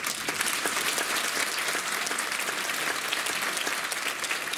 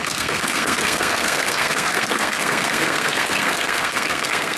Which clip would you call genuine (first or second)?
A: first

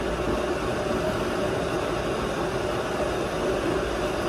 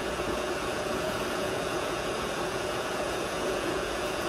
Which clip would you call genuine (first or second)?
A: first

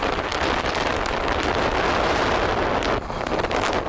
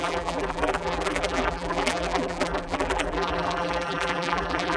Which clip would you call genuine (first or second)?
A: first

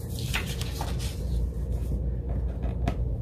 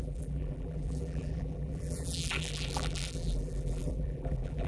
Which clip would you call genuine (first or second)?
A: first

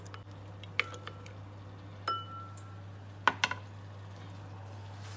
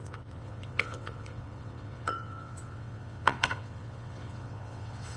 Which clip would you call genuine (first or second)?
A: first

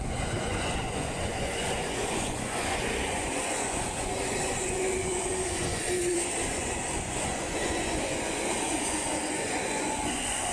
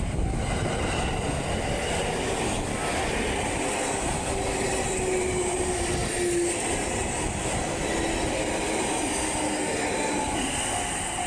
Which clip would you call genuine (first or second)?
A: second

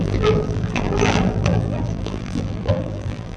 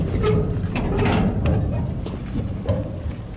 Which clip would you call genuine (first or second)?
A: second